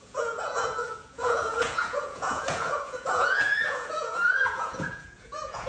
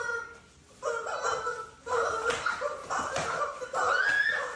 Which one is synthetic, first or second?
first